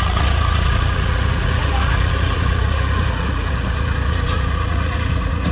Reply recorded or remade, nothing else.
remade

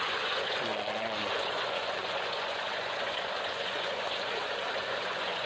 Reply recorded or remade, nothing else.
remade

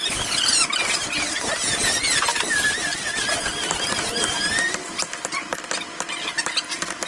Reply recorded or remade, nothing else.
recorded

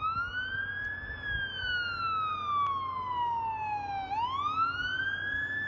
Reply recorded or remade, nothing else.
recorded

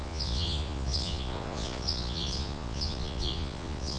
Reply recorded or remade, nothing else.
remade